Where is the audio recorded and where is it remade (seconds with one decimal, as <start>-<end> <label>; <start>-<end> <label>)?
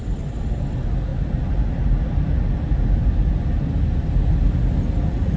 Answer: 0.0-5.4 recorded